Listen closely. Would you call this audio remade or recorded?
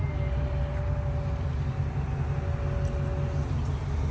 recorded